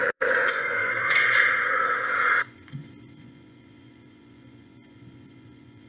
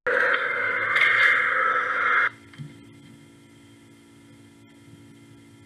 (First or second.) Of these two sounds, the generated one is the first